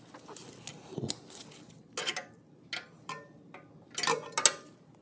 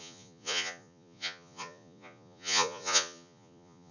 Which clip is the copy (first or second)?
second